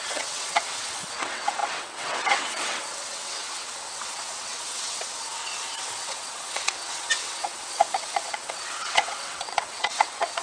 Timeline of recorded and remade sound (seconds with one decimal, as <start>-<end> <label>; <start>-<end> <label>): 0.0-10.4 remade